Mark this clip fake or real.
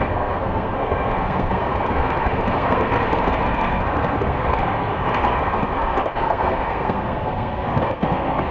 fake